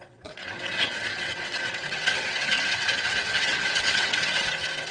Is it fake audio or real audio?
fake